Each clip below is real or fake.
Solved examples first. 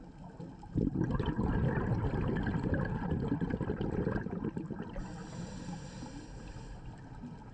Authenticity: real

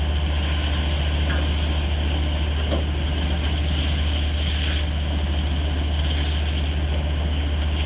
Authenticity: real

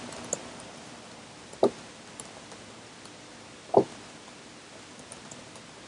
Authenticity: real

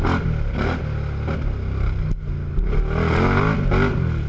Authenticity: real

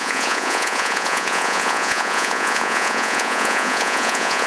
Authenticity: fake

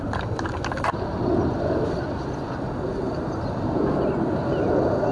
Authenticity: real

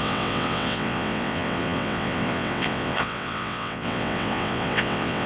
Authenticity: fake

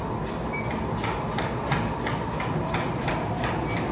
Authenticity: real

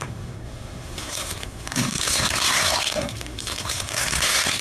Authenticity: fake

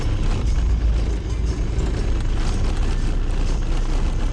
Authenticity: real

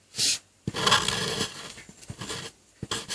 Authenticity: real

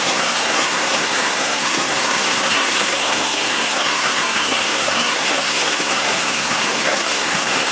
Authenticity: fake